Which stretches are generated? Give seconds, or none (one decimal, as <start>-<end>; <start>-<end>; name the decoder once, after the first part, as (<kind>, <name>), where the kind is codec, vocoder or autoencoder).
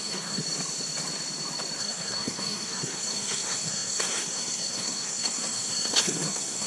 0.0-0.4 (codec, SNAC); 1.8-6.7